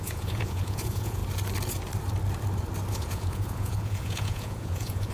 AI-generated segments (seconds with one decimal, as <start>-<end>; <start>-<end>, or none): 0.0-1.2; 2.9-5.1